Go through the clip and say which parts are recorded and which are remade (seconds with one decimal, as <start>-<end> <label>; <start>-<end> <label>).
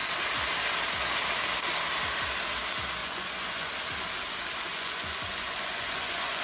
0.0-3.0 recorded; 3.0-3.7 remade; 3.7-4.7 recorded; 4.7-6.4 remade